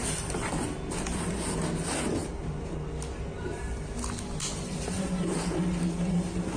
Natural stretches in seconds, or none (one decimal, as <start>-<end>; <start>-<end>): 0.0-6.6